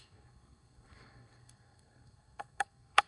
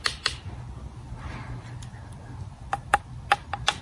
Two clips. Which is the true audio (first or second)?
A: second